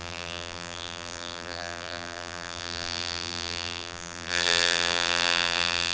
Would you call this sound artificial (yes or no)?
yes